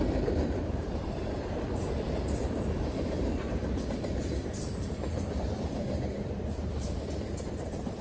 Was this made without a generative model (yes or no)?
no